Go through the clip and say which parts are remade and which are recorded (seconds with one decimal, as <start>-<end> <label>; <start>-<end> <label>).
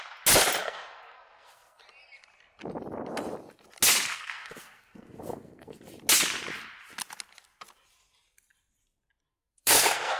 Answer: 0.0-0.6 recorded; 0.6-1.8 remade; 1.8-4.1 recorded; 4.1-5.8 remade; 5.8-9.3 recorded; 9.3-10.2 remade